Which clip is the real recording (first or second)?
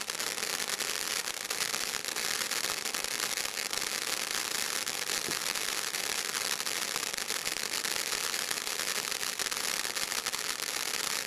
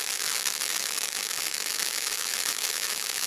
first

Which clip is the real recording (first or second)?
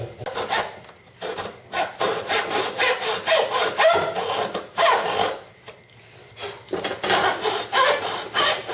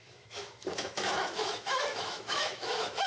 first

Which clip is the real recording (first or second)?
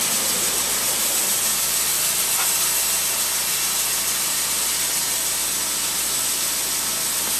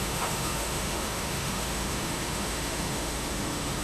first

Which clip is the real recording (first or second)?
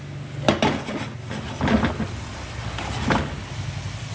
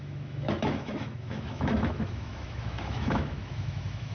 first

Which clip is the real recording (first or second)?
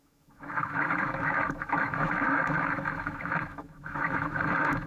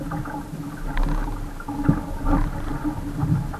second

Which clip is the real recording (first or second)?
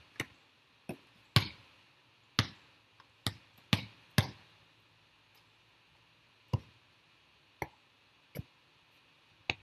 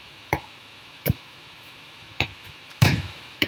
first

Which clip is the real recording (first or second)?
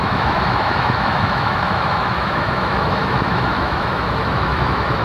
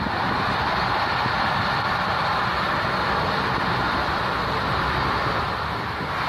second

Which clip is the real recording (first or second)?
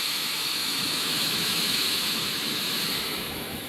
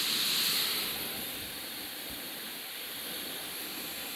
second